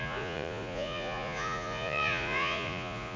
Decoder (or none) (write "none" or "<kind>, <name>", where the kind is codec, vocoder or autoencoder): vocoder, Vocos